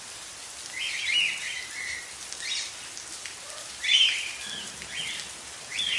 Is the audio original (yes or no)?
yes